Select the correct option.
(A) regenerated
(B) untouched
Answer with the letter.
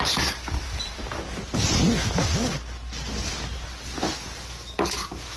B